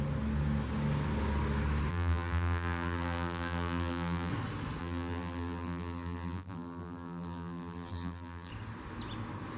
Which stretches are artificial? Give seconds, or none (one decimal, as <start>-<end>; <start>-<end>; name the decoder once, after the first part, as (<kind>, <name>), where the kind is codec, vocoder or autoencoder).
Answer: 1.9-4.3 (vocoder, BigVGAN v2); 4.8-8.5